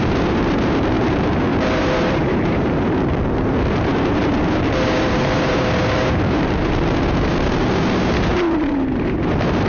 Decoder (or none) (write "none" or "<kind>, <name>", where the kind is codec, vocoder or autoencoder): vocoder, BigVGAN v2